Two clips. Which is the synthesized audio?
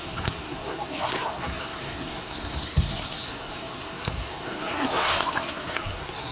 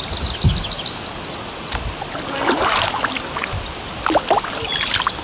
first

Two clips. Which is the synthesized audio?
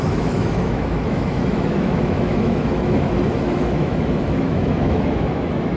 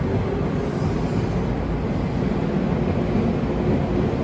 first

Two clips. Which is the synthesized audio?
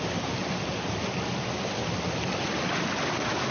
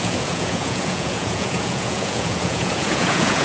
second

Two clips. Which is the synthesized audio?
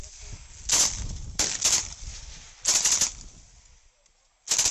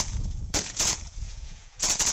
second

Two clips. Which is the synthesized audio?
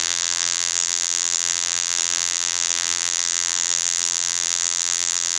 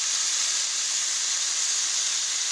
first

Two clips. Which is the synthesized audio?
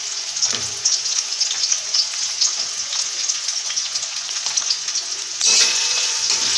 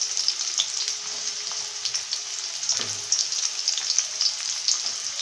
first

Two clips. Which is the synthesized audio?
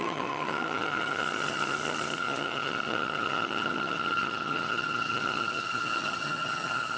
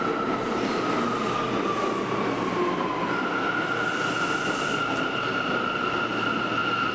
first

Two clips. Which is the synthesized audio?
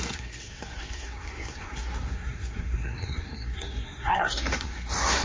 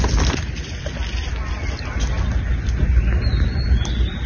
first